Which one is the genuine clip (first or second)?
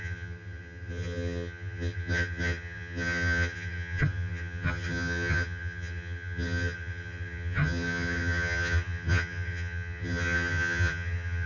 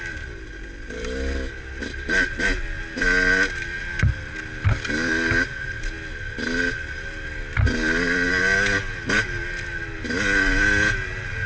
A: second